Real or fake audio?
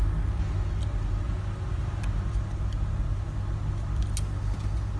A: real